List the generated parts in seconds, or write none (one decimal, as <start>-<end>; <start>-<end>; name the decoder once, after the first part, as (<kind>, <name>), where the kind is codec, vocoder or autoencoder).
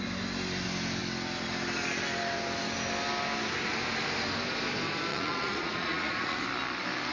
5.1-6.4 (vocoder, Vocos)